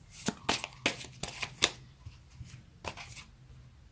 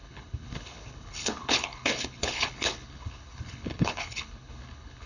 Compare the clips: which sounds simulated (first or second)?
second